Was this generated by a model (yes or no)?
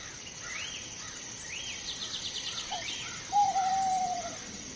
no